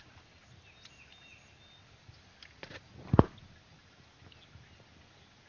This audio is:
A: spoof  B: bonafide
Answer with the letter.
B